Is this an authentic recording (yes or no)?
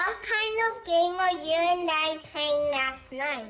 no